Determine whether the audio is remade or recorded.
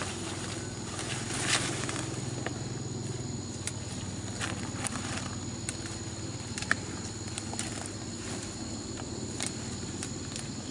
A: recorded